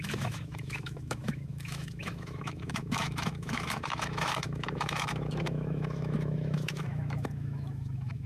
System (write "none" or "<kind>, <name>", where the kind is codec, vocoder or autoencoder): autoencoder, DAC-VAE